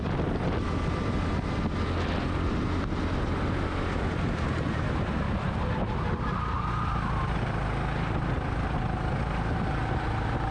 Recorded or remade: recorded